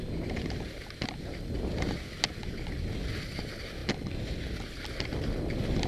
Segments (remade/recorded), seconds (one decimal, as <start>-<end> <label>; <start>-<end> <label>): 0.0-5.9 recorded